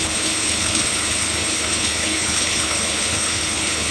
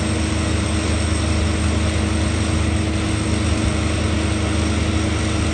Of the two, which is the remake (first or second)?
first